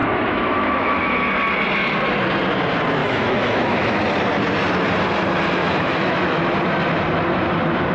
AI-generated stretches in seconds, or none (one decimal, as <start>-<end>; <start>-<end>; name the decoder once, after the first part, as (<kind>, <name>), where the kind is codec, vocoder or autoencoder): 0.0-1.3 (autoencoder, DAC-VAE); 3.0-4.0; 5.6-6.4

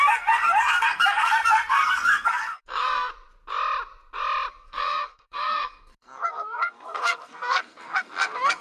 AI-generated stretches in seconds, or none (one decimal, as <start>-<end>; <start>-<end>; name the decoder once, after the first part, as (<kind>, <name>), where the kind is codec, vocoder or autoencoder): 0.0-3.1 (codec, SNAC); 4.5-8.6

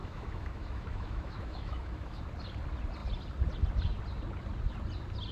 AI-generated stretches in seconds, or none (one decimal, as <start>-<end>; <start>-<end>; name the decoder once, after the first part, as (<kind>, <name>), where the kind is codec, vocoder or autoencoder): 0.0-2.2 (autoencoder, DAC-VAE)

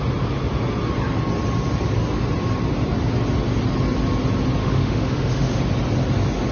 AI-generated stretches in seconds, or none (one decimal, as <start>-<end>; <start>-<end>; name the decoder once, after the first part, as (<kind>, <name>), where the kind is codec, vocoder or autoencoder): 4.6-5.6 (autoencoder, DAC-VAE)

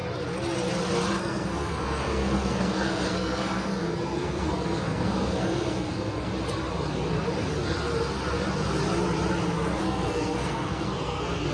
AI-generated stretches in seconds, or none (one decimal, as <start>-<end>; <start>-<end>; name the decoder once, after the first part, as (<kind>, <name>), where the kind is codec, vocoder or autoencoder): 1.2-6.3 (codec, SNAC); 9.8-11.5

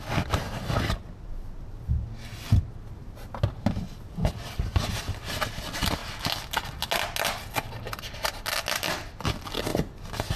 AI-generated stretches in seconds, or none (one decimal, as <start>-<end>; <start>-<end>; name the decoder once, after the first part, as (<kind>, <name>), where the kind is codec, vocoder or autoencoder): none

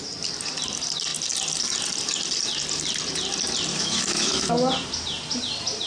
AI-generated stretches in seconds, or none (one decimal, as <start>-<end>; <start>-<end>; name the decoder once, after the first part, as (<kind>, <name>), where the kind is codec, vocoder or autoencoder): 3.7-4.7 (autoencoder, DAC-VAE)

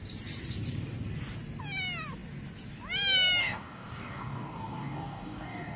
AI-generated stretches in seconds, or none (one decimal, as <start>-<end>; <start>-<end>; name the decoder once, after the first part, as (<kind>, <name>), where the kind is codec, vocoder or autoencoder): 3.4-5.8 (codec, DAC)